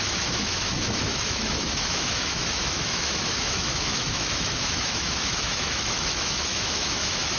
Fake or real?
fake